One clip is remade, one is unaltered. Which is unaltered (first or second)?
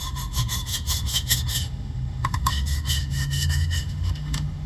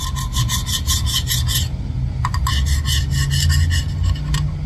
second